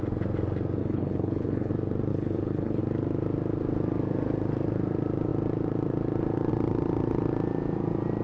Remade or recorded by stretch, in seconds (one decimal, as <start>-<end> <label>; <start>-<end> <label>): 0.0-0.8 recorded; 0.8-1.7 remade; 1.7-2.1 recorded; 2.1-2.8 remade; 2.8-8.2 recorded